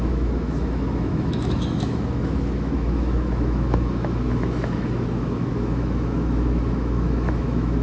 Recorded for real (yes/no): no